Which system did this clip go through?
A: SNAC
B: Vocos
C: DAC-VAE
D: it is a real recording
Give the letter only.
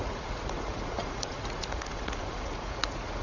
B